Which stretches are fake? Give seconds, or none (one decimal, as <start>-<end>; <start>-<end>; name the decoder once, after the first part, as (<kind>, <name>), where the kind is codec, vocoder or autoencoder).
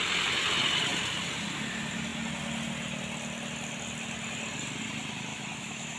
5.3-6.0 (autoencoder, DAC-VAE)